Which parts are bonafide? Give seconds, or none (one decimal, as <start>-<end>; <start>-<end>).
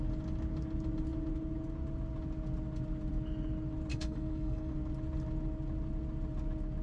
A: 0.0-3.9; 4.7-6.8